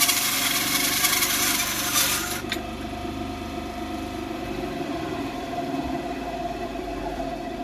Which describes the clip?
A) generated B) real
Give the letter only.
A